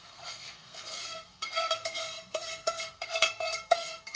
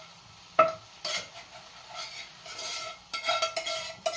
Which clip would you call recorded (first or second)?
second